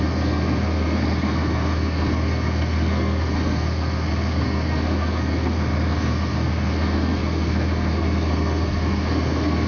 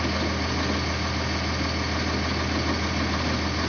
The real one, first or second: second